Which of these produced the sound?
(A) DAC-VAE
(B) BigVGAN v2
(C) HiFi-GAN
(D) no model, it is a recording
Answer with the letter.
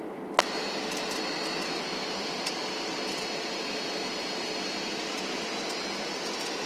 D